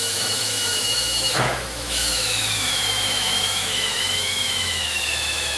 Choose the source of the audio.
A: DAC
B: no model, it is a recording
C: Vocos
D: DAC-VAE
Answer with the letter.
D